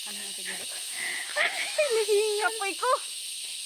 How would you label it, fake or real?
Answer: fake